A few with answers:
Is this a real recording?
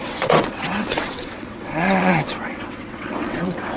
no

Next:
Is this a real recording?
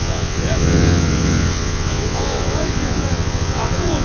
no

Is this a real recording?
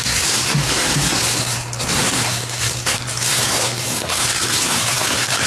no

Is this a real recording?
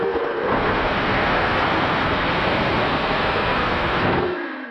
no